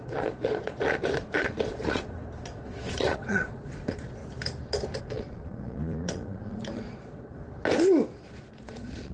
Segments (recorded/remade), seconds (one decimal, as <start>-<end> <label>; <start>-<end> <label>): 0.0-4.2 remade; 4.2-5.0 recorded; 5.0-7.4 remade; 7.4-8.6 recorded; 8.6-9.1 remade